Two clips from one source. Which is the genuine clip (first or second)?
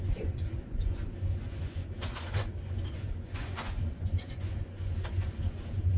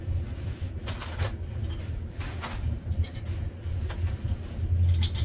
second